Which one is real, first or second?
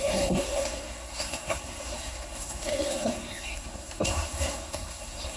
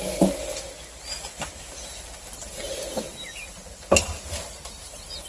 second